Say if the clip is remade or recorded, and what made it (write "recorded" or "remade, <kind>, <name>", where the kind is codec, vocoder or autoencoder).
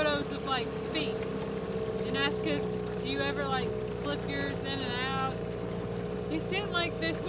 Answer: recorded